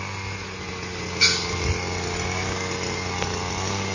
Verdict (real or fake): real